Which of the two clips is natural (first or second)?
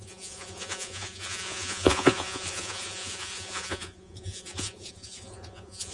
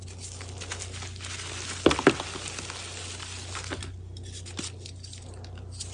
second